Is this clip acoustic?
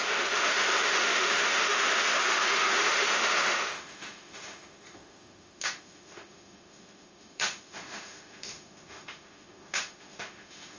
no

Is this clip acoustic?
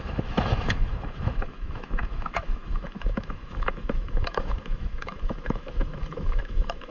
no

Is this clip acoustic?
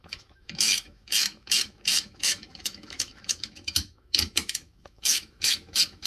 no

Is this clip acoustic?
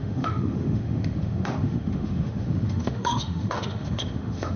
no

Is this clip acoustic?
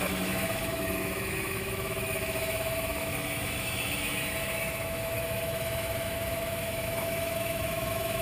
no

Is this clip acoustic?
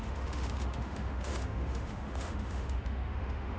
no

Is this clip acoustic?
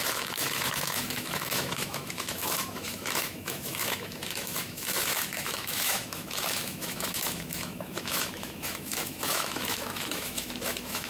no